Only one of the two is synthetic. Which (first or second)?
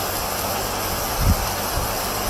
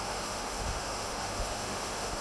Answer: second